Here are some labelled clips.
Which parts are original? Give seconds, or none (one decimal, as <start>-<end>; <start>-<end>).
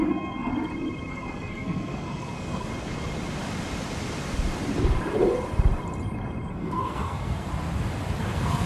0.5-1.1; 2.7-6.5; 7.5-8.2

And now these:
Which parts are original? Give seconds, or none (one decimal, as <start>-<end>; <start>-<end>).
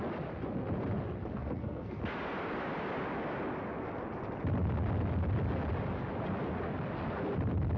0.0-1.4; 2.0-7.8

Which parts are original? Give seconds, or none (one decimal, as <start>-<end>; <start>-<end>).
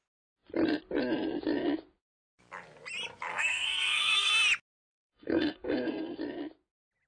0.0-3.3; 4.3-4.9; 6.2-7.1